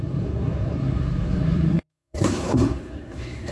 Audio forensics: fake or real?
fake